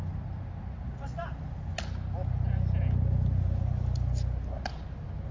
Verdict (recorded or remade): recorded